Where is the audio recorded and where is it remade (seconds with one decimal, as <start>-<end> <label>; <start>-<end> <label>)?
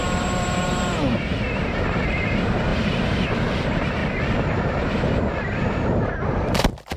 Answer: 0.0-4.0 remade; 4.0-4.7 recorded; 4.7-7.0 remade